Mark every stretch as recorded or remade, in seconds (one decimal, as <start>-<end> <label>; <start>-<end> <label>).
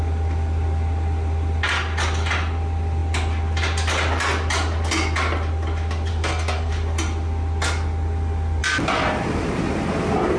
0.0-6.1 recorded; 6.1-6.7 remade; 6.7-10.4 recorded